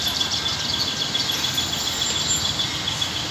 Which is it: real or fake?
real